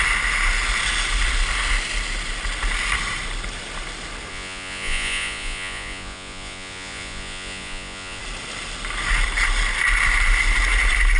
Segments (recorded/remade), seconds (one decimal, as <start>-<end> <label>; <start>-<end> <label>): 0.0-4.3 recorded; 4.3-8.2 remade; 8.2-11.2 recorded